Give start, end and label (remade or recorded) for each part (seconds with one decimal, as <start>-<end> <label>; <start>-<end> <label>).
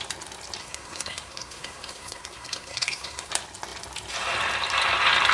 0.0-0.6 recorded; 0.6-3.3 remade; 3.3-5.3 recorded